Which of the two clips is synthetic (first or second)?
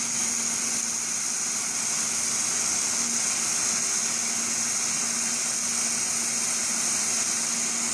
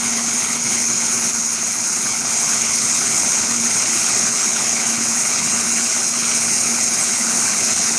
second